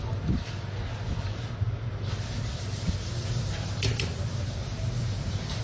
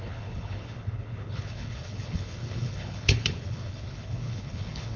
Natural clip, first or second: first